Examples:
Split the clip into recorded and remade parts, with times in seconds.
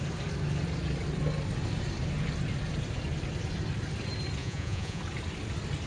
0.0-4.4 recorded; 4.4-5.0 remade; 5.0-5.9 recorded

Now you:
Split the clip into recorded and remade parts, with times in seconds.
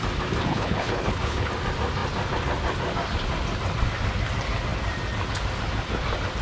0.0-0.5 recorded; 0.5-1.5 remade; 1.5-6.4 recorded